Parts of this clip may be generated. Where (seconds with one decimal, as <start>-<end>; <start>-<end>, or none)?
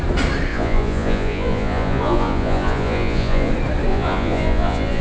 0.5-3.5; 3.9-5.0